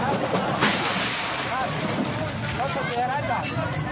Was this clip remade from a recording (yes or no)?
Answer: no